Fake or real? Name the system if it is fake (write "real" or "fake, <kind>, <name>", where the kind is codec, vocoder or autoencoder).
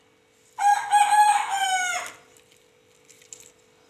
real